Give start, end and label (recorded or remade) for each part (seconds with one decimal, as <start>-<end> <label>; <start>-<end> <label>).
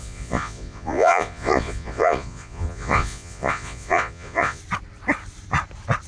0.0-4.6 remade; 4.6-6.1 recorded